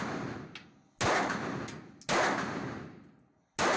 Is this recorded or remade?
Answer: recorded